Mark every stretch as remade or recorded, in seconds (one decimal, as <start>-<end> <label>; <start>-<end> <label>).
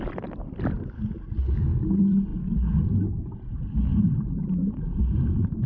0.0-5.7 recorded